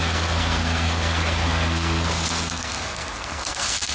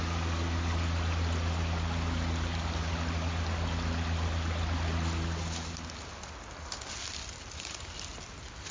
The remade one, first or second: first